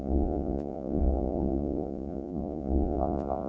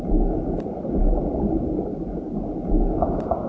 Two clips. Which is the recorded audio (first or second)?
second